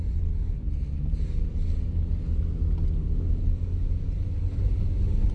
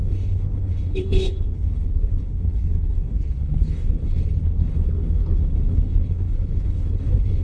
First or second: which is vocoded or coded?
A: second